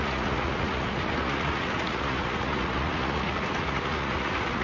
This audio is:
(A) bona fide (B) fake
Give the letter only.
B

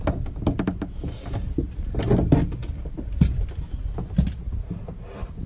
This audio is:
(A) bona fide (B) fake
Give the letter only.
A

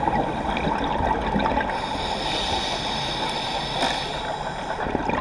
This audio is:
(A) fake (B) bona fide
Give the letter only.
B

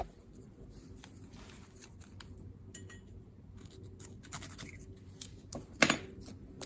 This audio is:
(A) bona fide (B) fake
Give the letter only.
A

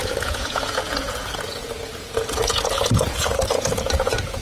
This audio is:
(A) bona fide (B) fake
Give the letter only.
B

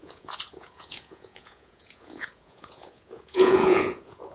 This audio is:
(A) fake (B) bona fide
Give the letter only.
A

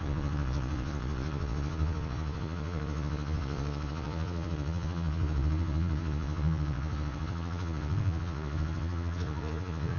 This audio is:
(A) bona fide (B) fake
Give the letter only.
B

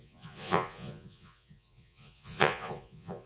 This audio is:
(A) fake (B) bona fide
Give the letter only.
A